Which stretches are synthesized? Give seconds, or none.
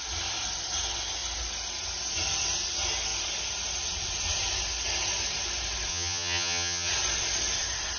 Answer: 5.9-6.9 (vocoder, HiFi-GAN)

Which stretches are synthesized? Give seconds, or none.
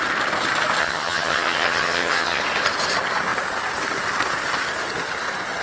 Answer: 0.8-2.4 (vocoder, HiFi-GAN)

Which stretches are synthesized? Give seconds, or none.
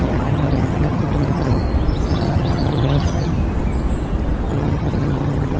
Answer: 0.0-1.6 (vocoder, HiFi-GAN); 2.1-3.3; 4.5-5.6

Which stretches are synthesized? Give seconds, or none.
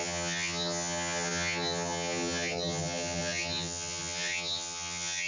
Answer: 0.0-5.3 (vocoder, HiFi-GAN)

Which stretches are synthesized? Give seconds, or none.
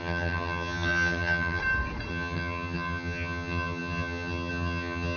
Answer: 0.0-1.6 (vocoder, HiFi-GAN); 2.1-5.2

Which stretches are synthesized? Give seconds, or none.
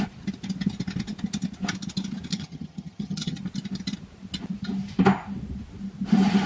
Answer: 2.3-3.4 (vocoder, HiFi-GAN)